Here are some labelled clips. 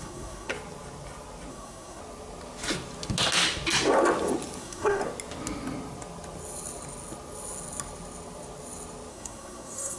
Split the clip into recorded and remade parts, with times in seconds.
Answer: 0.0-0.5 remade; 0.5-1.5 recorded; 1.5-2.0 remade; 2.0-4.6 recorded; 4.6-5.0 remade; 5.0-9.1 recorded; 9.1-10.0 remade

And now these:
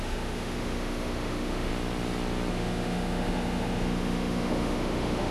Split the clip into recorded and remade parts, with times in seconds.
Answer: 0.0-1.7 remade; 1.7-2.5 recorded; 2.5-5.3 remade

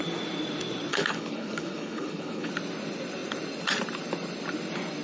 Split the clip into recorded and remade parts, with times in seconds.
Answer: 0.0-0.9 recorded; 0.9-2.5 remade; 2.5-5.0 recorded

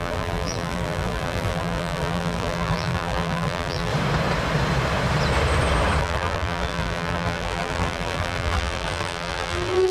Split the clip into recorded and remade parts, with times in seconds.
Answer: 0.0-3.9 remade; 3.9-6.0 recorded; 6.0-9.9 remade

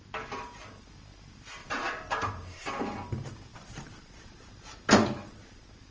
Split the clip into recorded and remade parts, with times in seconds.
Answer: 0.0-1.6 recorded; 1.6-2.8 remade; 2.8-3.5 recorded; 3.5-4.5 remade; 4.5-5.9 recorded

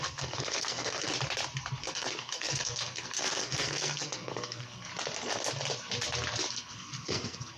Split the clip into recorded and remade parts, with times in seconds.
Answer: 0.0-1.1 remade; 1.1-1.8 recorded; 1.8-4.9 remade; 4.9-6.5 recorded; 6.5-7.6 remade